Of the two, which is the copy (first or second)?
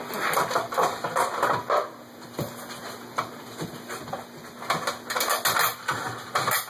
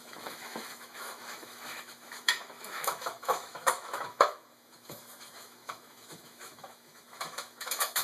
second